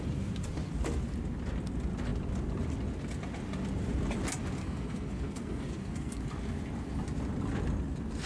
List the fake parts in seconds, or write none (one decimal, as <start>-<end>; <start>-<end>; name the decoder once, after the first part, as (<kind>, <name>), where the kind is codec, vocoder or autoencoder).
4.6-6.2 (codec, SNAC)